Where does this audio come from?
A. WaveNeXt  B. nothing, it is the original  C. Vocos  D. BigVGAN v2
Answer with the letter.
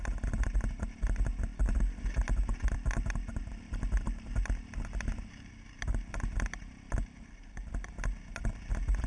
B